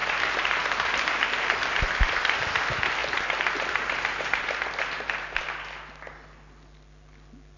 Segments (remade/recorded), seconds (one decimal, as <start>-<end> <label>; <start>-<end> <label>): 0.0-1.1 remade; 1.1-3.0 recorded; 3.0-5.1 remade; 5.1-7.6 recorded